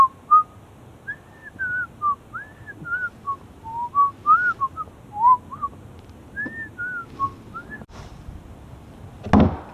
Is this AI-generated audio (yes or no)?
no